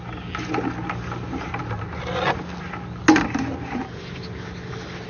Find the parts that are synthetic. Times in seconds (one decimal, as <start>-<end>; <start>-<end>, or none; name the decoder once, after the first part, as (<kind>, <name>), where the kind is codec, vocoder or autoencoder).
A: none